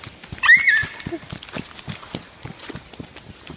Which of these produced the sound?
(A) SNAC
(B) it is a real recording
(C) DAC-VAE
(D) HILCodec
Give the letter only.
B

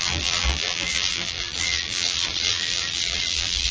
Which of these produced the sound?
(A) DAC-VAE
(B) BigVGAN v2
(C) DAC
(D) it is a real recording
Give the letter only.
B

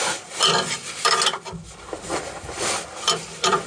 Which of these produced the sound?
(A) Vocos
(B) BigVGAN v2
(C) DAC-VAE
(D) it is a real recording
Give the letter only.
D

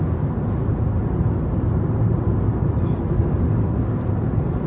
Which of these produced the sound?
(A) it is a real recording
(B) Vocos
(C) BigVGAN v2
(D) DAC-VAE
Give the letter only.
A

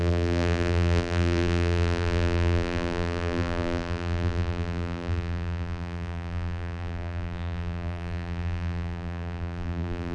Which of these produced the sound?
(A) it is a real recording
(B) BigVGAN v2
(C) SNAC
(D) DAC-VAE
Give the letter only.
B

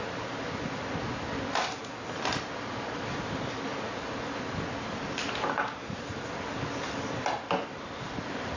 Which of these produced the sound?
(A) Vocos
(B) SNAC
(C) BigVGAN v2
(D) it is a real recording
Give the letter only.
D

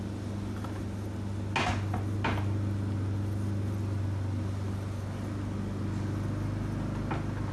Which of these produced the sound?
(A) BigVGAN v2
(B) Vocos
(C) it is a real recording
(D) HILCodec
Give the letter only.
C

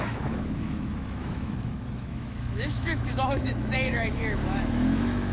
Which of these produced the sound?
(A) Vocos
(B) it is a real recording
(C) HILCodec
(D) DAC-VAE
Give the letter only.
D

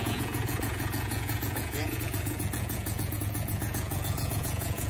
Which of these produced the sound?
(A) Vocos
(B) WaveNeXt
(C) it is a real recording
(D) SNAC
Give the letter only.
A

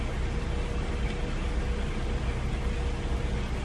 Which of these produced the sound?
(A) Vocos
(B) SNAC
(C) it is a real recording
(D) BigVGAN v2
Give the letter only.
C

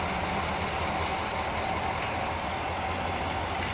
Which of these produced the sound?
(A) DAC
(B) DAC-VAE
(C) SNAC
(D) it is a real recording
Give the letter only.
D